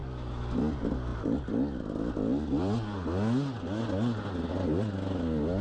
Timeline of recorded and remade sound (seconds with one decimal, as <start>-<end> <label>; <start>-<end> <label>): 0.0-5.6 recorded